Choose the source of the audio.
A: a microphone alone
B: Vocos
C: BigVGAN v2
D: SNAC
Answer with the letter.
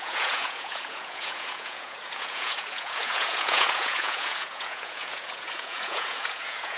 B